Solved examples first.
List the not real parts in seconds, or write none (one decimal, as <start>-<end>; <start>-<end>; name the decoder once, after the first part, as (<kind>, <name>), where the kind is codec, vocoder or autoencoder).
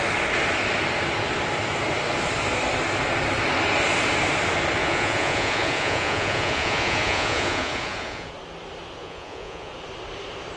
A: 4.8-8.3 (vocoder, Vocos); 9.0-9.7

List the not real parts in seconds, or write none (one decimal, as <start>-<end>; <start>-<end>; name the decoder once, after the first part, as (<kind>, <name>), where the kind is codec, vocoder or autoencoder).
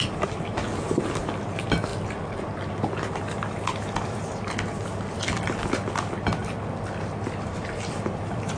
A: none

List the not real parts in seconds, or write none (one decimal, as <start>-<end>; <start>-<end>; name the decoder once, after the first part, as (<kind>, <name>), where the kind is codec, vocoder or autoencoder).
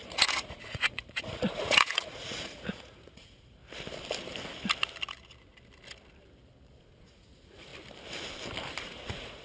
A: 0.0-3.6 (vocoder, Vocos); 6.8-7.7; 8.8-9.4